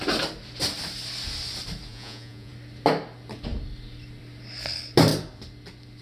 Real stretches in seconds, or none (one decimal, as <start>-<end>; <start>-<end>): 0.0-1.9; 2.5-6.0